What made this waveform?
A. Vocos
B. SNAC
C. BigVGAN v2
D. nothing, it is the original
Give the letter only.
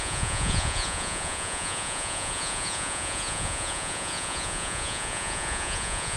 A